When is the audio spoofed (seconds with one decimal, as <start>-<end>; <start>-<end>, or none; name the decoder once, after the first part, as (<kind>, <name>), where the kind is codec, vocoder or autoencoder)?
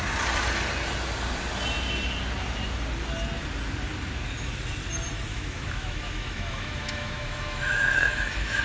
5.3-8.6 (autoencoder, DAC-VAE)